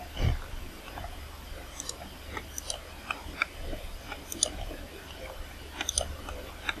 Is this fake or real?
real